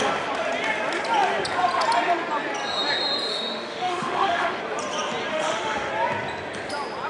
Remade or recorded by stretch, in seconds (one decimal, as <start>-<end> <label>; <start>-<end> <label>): 0.0-3.3 recorded; 3.3-4.6 remade; 4.6-5.3 recorded; 5.3-5.9 remade; 5.9-7.1 recorded